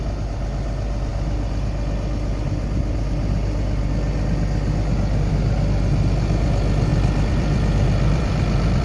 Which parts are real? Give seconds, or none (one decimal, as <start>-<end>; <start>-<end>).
0.0-6.9